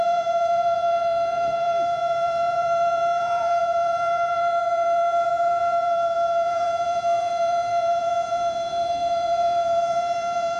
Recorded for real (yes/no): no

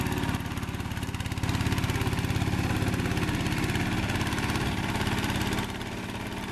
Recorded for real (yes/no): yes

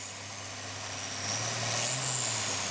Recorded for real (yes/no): yes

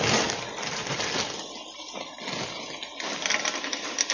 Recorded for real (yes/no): yes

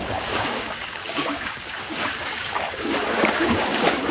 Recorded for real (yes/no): no